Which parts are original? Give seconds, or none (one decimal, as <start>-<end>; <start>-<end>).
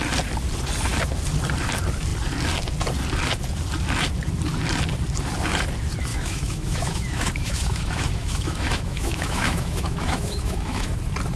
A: 0.0-6.1; 11.0-11.4